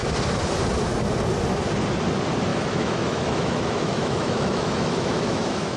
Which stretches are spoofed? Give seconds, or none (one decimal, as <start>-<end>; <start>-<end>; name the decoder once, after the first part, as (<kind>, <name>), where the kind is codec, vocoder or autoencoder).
2.5-5.8 (autoencoder, DAC-VAE)